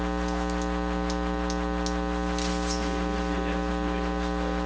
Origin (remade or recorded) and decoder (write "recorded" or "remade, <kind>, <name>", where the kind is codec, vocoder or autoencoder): recorded